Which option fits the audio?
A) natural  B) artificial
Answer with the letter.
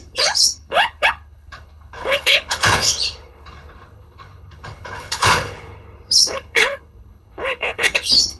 B